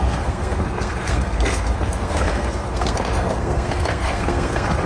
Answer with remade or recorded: remade